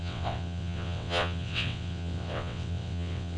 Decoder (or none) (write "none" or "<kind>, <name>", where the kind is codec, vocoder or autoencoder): vocoder, WaveNeXt